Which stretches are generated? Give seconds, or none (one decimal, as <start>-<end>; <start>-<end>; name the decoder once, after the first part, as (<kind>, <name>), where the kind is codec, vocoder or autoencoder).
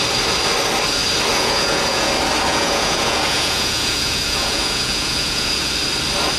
1.3-2.1 (vocoder, Vocos); 2.5-5.7